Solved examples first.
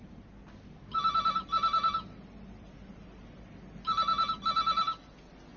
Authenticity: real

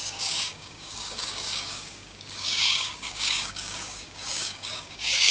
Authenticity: fake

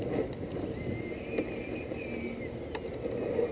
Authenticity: real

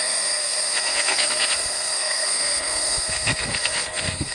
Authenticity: fake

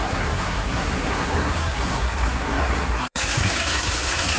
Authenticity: fake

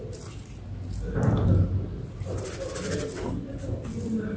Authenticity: real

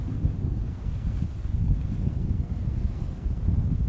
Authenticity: fake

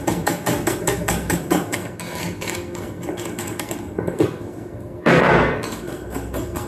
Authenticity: fake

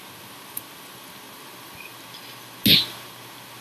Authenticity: real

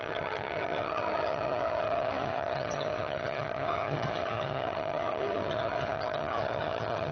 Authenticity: fake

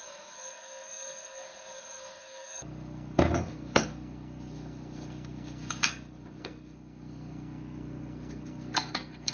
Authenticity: fake